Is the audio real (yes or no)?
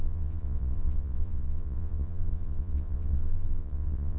no